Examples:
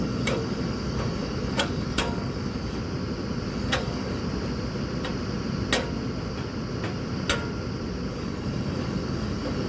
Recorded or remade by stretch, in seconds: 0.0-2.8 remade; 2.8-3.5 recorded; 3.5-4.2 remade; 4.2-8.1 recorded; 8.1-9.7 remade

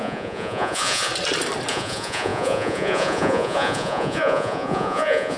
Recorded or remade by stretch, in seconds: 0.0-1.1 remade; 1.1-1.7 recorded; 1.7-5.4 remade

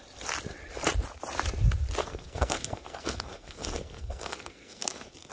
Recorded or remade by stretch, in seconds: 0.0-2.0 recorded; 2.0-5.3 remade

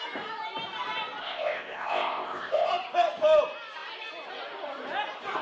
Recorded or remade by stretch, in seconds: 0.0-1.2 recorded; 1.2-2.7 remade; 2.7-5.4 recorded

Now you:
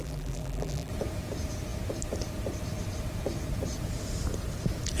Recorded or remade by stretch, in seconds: 0.0-0.9 remade; 0.9-5.0 recorded